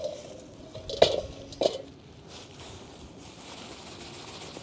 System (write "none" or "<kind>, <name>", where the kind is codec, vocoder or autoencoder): none